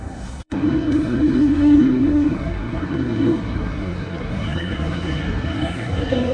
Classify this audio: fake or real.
fake